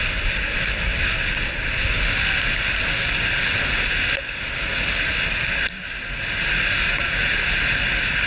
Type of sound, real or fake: real